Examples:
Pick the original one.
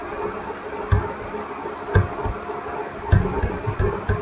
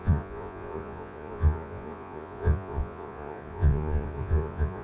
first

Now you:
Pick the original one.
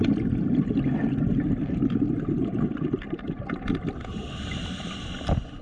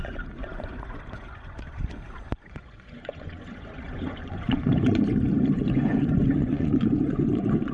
first